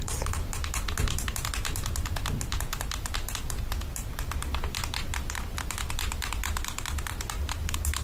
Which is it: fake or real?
real